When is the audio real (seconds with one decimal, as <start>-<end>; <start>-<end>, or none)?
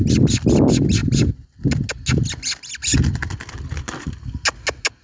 0.0-5.0